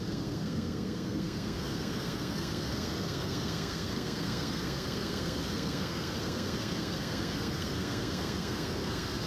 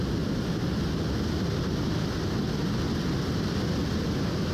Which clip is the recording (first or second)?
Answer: second